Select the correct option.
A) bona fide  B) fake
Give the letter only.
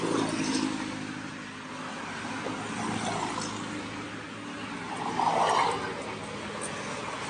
A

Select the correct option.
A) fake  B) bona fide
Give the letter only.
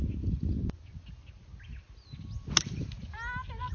B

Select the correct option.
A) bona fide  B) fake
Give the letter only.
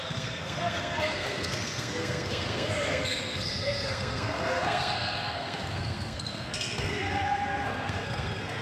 B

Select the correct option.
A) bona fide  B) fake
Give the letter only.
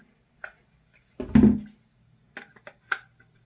A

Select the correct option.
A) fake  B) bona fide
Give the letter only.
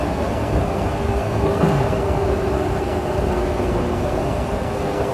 A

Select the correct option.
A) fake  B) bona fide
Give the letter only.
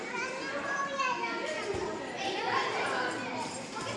B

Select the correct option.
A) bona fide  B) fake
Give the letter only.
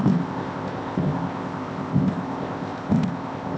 B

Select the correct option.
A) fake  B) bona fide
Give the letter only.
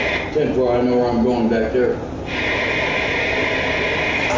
B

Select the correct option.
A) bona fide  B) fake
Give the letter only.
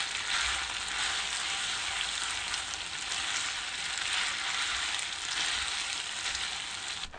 A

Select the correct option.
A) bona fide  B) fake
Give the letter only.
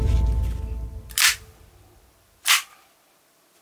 A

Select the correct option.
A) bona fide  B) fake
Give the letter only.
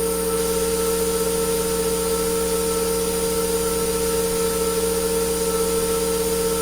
A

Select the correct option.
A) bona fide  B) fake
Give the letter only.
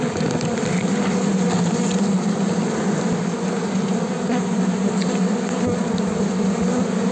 A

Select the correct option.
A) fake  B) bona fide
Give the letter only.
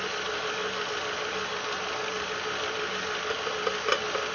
B